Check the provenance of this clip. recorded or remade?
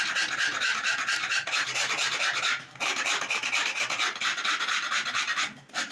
recorded